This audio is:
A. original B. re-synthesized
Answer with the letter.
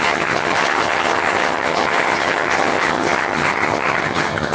B